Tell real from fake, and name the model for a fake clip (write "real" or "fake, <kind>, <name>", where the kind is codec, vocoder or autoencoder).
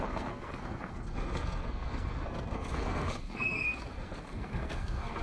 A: fake, codec, SNAC